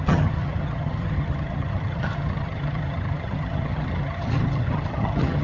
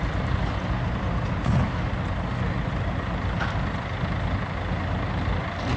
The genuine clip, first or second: second